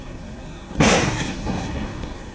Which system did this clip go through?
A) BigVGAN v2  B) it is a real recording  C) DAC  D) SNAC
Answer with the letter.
D